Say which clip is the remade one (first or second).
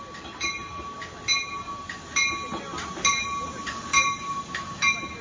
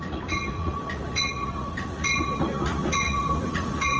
second